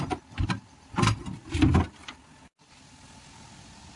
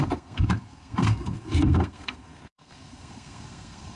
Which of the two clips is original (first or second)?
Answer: first